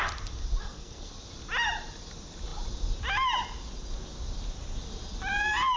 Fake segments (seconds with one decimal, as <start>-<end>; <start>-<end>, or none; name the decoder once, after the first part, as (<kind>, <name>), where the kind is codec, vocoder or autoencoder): 0.6-1.1 (codec, SNAC)